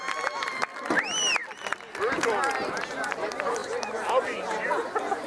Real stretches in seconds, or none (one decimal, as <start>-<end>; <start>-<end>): 0.0-5.3